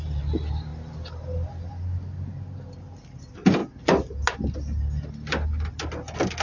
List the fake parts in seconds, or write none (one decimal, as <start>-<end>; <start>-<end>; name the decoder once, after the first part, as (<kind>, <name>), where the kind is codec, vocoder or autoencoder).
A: none